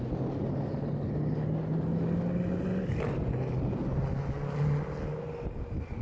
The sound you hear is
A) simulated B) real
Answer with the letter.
B